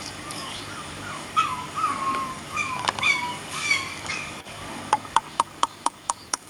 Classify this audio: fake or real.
fake